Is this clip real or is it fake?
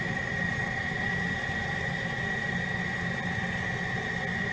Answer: real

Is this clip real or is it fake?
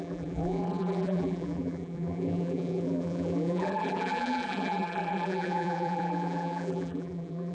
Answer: fake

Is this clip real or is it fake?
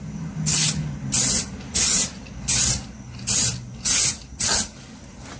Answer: real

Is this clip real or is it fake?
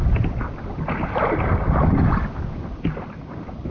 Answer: real